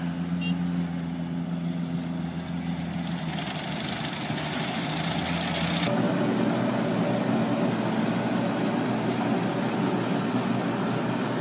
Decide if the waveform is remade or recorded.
recorded